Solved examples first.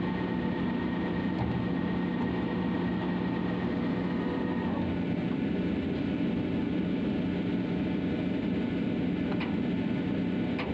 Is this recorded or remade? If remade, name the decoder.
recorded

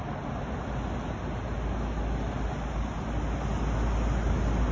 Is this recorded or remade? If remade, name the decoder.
recorded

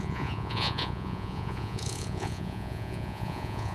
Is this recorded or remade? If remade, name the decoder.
remade, vocoder, Vocos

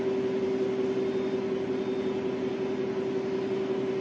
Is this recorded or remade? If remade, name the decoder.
recorded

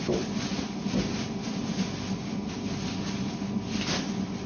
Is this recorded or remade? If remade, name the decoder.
recorded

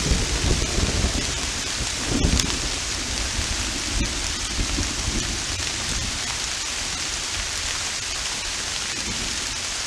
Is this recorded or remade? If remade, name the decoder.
recorded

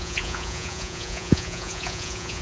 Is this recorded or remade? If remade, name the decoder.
remade, vocoder, Vocos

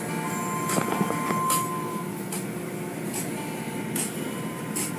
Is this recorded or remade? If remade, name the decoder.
recorded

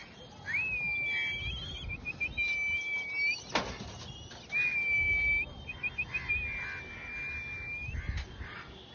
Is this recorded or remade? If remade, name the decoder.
recorded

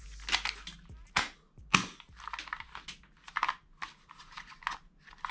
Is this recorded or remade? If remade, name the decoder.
recorded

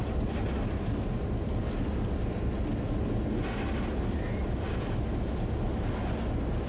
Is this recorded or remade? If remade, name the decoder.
recorded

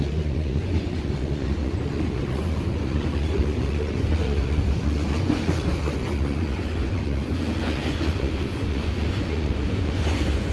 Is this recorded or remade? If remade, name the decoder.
remade, vocoder, Vocos